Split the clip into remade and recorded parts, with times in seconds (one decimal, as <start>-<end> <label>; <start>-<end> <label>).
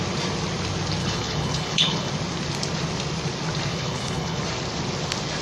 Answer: 0.0-1.0 recorded; 1.0-2.1 remade; 2.1-3.7 recorded; 3.7-4.4 remade; 4.4-5.4 recorded